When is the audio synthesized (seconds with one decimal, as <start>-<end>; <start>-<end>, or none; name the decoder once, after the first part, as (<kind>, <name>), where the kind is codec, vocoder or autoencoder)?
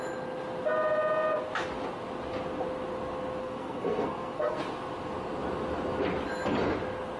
3.4-4.6 (codec, SNAC)